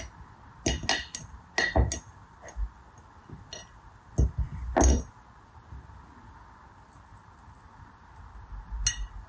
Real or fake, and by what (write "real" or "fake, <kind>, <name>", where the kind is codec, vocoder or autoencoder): real